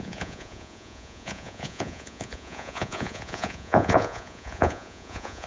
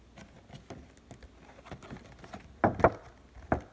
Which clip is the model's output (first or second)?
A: first